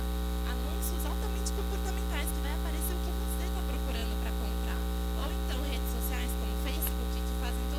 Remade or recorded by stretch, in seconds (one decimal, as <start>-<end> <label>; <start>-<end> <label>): 0.0-7.8 recorded